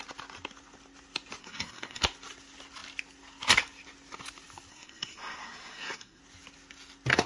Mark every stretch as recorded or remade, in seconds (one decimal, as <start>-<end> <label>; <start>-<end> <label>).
0.0-1.4 recorded; 1.4-2.0 remade; 2.0-4.7 recorded; 4.7-6.2 remade; 6.2-7.3 recorded